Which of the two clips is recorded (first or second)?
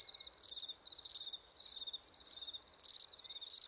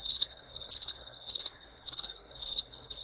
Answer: first